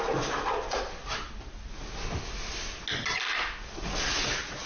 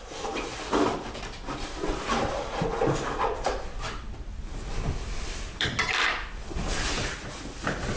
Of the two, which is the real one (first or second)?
first